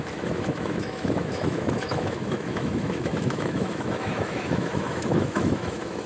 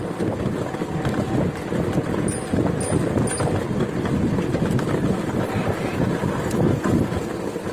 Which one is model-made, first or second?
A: first